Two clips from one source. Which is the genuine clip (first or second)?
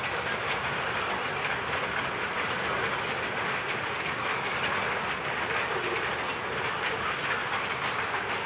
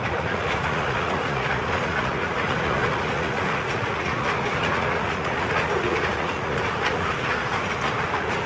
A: first